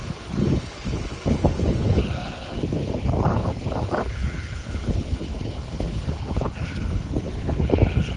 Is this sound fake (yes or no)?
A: yes